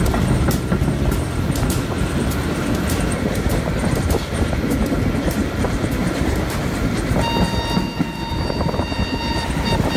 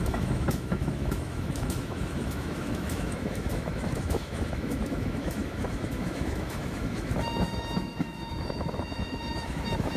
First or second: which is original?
first